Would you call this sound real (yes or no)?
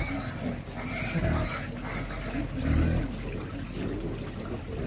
yes